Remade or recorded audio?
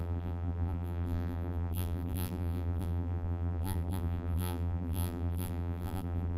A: remade